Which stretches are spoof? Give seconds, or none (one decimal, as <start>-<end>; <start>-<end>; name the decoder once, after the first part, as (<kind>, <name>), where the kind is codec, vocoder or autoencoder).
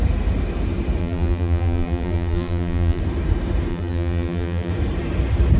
1.0-3.0 (vocoder, BigVGAN v2); 3.7-4.7